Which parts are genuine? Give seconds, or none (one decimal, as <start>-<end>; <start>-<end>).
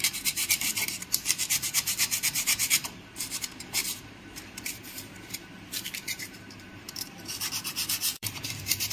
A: none